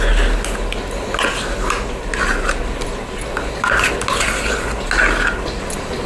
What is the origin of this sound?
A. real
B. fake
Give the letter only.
A